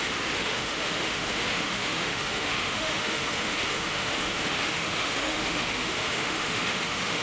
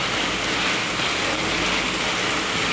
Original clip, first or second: second